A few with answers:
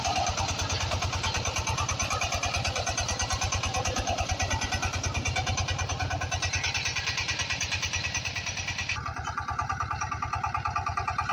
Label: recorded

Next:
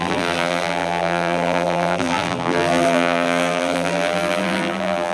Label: remade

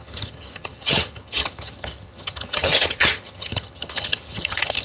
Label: remade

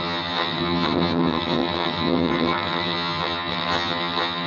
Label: remade